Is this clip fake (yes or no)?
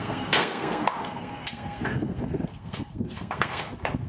yes